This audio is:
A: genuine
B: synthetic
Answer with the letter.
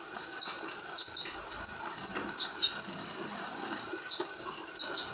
A